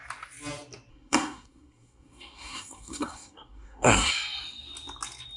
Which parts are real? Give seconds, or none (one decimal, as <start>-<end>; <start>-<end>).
0.0-0.9; 4.1-5.4